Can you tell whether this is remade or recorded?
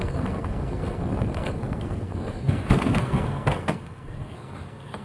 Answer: remade